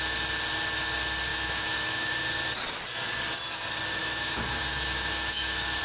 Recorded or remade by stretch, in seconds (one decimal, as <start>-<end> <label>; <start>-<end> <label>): 0.0-1.3 recorded; 1.3-2.1 remade; 2.1-4.0 recorded; 4.0-5.8 remade